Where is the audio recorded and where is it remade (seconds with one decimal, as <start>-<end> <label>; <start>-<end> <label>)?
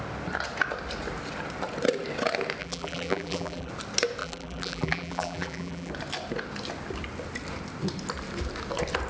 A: 0.0-2.6 recorded; 2.6-3.7 remade; 3.7-4.2 recorded; 4.2-5.9 remade; 5.9-9.1 recorded